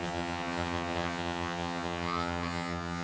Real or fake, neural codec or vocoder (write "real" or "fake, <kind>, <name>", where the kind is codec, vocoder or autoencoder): fake, vocoder, HiFi-GAN